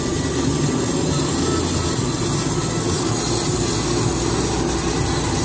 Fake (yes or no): no